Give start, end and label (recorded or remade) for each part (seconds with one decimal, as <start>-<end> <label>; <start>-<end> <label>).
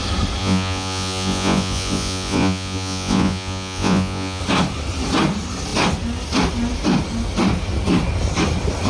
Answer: 0.0-0.4 recorded; 0.4-4.4 remade; 4.4-8.9 recorded